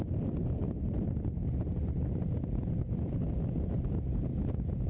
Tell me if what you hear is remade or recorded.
recorded